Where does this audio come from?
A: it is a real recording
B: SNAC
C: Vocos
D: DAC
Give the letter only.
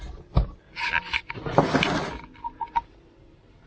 A